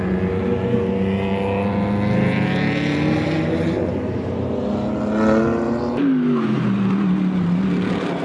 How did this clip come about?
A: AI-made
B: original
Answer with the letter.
B